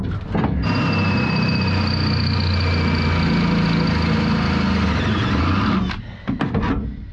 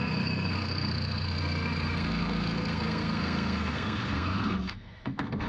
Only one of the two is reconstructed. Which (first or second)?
second